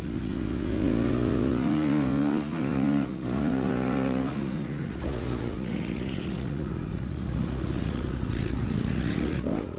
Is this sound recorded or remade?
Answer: remade